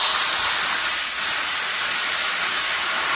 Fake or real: real